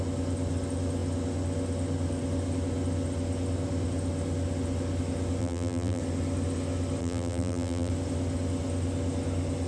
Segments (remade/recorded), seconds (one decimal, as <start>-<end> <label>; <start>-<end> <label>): 0.0-5.4 recorded; 5.4-6.0 remade; 6.0-7.0 recorded; 7.0-7.9 remade; 7.9-9.7 recorded